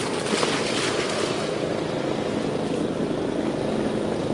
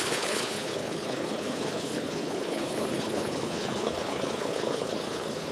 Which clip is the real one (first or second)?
first